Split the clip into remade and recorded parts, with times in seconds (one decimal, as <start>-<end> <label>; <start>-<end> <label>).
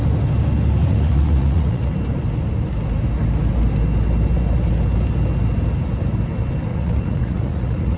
0.0-0.8 recorded; 0.8-1.9 remade; 1.9-6.7 recorded; 6.7-8.0 remade